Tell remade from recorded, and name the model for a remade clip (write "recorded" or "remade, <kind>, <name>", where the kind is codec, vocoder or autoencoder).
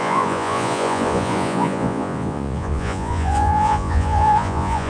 remade, vocoder, Vocos